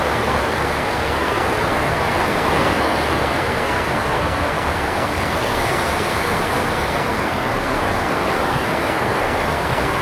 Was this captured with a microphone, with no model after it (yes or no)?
no